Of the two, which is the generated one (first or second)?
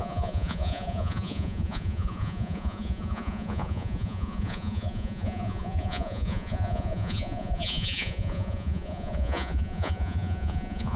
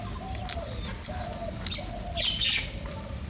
first